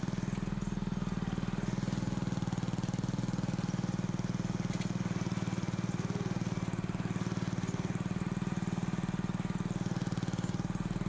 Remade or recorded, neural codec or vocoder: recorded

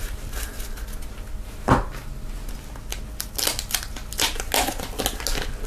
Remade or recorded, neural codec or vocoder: recorded